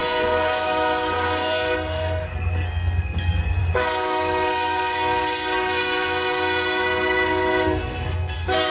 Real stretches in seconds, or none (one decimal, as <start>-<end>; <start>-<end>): none